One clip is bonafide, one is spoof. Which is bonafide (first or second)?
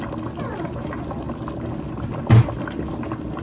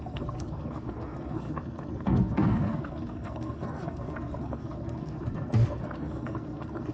first